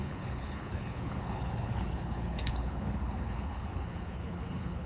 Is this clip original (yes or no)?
no